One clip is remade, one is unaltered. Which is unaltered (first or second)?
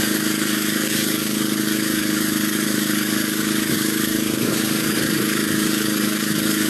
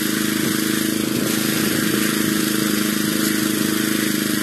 second